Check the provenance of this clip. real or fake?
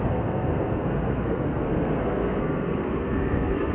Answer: fake